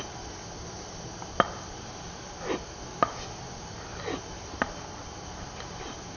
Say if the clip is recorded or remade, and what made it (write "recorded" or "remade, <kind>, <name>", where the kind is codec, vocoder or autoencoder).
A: recorded